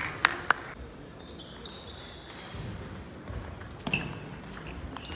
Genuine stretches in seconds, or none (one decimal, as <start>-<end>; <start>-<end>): 0.0-5.1